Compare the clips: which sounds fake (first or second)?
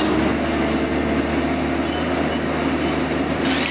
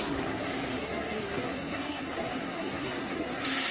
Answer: second